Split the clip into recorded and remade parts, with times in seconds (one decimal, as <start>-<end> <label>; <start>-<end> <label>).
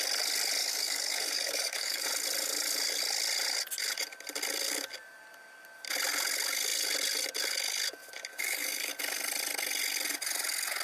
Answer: 0.0-0.6 recorded; 0.6-2.1 remade; 2.1-8.3 recorded; 8.3-8.9 remade; 8.9-10.8 recorded